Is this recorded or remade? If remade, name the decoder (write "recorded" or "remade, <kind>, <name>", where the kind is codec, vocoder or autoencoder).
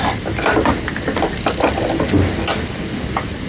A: recorded